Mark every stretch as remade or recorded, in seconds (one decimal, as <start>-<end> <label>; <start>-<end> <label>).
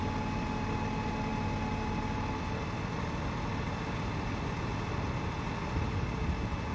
0.0-6.7 recorded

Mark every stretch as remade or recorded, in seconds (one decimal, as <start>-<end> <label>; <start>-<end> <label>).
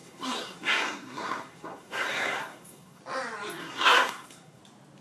0.0-3.0 remade; 3.0-3.6 recorded; 3.6-4.6 remade; 4.6-5.0 recorded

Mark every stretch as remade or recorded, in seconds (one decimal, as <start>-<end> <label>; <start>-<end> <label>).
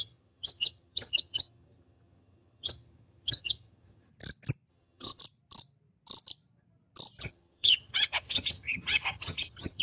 0.0-4.1 remade; 4.1-4.7 recorded; 4.7-5.2 remade; 5.2-7.2 recorded; 7.2-9.8 remade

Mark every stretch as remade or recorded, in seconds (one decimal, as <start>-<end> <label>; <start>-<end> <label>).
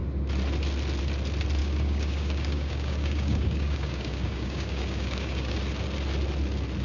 0.0-1.6 recorded; 1.6-5.6 remade; 5.6-6.8 recorded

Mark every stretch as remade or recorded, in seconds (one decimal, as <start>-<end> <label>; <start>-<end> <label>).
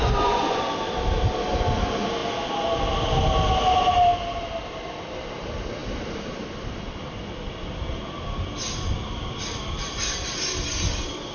0.0-0.6 remade; 0.6-11.3 recorded